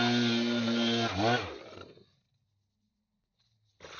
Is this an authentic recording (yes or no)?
yes